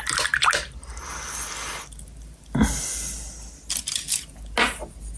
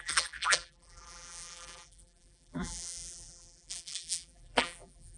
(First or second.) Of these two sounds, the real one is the first